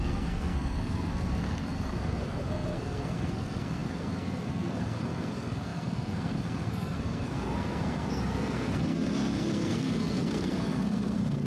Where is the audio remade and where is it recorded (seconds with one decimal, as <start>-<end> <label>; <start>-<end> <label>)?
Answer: 0.0-11.5 remade